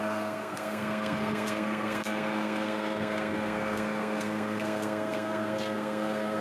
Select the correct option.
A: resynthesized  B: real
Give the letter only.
A